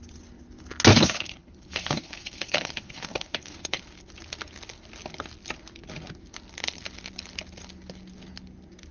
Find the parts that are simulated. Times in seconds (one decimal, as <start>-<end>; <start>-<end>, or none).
0.9-3.8